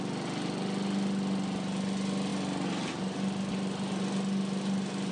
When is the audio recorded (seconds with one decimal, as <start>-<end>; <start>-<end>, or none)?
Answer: 0.0-5.1